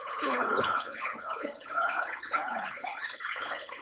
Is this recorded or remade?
remade